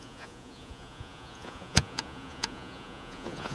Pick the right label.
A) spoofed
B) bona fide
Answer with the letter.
A